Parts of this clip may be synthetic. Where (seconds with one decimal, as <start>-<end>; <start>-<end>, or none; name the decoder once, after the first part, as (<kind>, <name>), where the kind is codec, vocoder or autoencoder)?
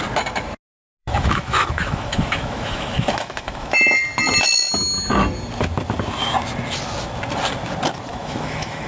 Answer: 1.0-3.8 (autoencoder, DAC-VAE); 8.1-8.9